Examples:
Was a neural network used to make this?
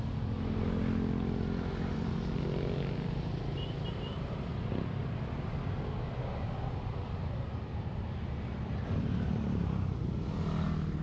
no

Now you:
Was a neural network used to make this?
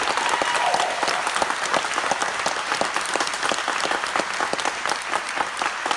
no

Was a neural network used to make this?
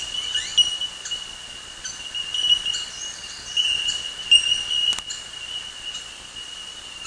no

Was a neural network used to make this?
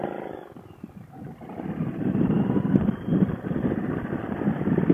no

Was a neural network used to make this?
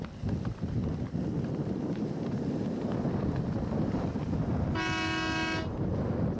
no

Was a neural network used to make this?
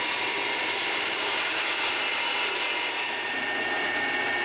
yes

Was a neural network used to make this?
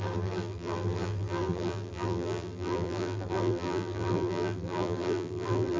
yes